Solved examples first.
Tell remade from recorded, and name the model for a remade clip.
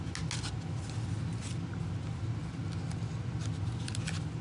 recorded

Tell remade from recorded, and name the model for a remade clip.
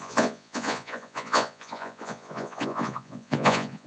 remade, vocoder, Vocos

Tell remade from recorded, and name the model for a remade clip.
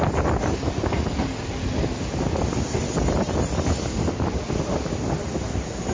recorded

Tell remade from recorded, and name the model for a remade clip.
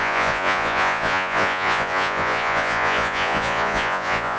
remade, vocoder, Vocos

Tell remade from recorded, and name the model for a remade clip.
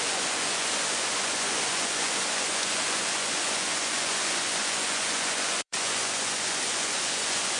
remade, vocoder, Vocos